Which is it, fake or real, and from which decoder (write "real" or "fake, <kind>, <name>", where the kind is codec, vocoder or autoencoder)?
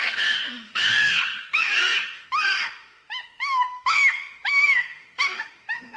fake, autoencoder, DAC-VAE